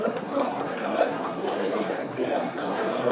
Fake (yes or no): yes